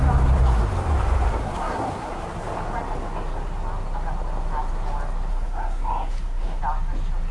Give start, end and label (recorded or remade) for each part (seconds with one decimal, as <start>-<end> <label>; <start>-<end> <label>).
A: 0.0-1.4 recorded; 1.4-2.2 remade; 2.2-5.3 recorded; 5.3-6.6 remade; 6.6-7.3 recorded